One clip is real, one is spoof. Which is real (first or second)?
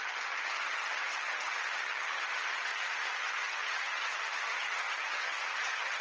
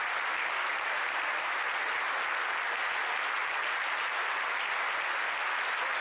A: second